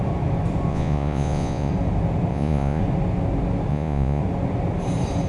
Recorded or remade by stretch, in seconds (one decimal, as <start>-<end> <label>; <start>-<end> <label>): 0.0-0.7 recorded; 0.7-1.7 remade; 1.7-2.3 recorded; 2.3-2.8 remade; 2.8-3.7 recorded; 3.7-4.2 remade; 4.2-5.3 recorded